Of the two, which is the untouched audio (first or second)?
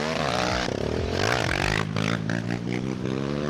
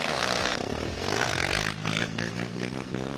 first